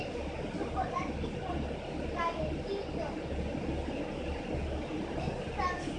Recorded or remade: recorded